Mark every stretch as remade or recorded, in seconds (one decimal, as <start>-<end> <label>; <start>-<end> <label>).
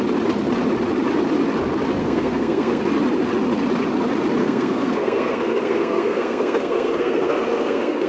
0.0-2.0 recorded; 2.0-2.8 remade; 2.8-4.4 recorded; 4.4-8.1 remade